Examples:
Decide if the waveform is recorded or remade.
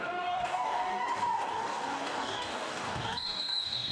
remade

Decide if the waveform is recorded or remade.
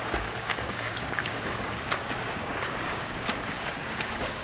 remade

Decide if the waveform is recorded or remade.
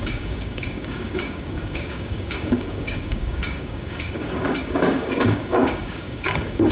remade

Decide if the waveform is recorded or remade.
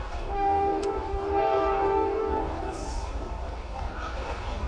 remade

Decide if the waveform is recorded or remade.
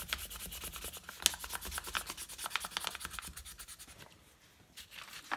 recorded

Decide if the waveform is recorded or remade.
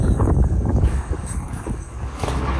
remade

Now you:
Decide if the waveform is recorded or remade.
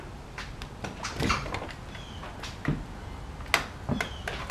recorded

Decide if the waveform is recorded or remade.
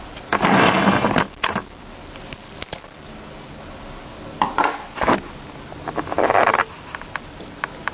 recorded